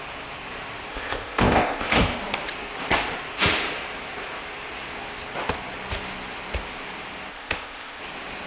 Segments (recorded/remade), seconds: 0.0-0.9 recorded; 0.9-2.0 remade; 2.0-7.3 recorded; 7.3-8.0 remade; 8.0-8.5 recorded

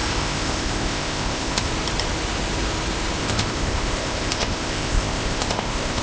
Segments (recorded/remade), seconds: 0.0-1.7 remade; 1.7-3.2 recorded; 3.2-6.0 remade

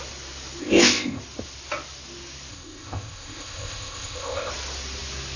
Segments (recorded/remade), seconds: 0.0-0.6 recorded; 0.6-1.2 remade; 1.2-2.5 recorded; 2.5-4.5 remade; 4.5-5.4 recorded